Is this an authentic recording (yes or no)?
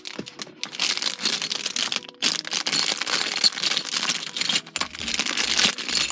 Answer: yes